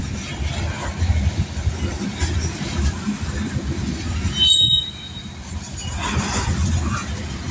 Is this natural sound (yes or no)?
yes